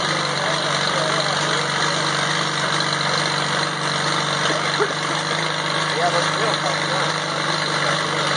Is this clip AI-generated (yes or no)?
no